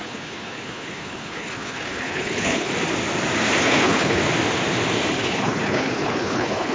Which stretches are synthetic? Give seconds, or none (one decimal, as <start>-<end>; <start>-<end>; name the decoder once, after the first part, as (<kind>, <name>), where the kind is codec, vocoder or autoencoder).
0.0-2.7 (codec, HILCodec); 3.6-4.2; 5.1-6.7